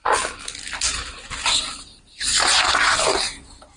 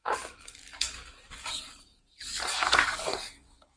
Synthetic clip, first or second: second